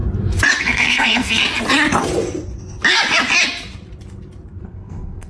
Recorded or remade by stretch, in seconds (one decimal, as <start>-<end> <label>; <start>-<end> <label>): 0.0-0.6 recorded; 0.6-1.4 remade; 1.4-4.6 recorded; 4.6-5.3 remade